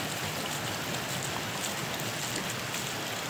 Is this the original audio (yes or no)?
yes